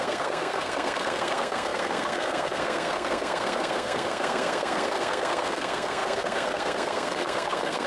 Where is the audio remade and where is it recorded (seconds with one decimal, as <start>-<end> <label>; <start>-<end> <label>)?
0.0-7.9 remade